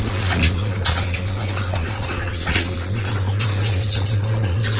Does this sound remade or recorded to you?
remade